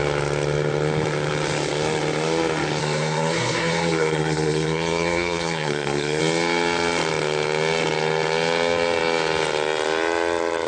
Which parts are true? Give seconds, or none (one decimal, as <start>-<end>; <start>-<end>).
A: 0.0-2.8; 6.2-10.7